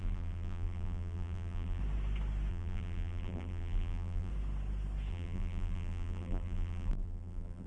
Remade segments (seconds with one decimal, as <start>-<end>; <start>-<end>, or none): 0.0-1.8; 2.5-4.3; 5.1-7.7